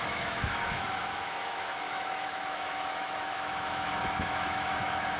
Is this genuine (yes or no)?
no